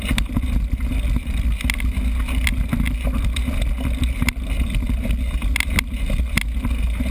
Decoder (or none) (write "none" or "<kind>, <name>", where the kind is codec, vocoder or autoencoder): none